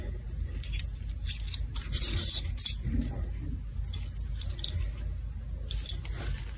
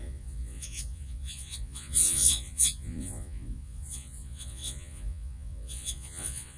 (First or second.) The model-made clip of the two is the second